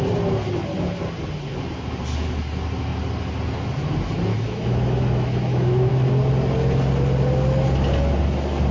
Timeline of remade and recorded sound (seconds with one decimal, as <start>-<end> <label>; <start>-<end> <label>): 0.0-4.3 recorded; 4.3-5.9 remade; 5.9-8.7 recorded